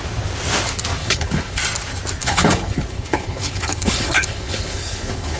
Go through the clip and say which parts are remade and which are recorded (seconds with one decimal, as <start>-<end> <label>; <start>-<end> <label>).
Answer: 0.0-1.0 recorded; 1.0-1.6 remade; 1.6-2.2 recorded; 2.2-5.4 remade